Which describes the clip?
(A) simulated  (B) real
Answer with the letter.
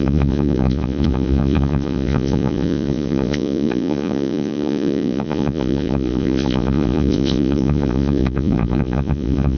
A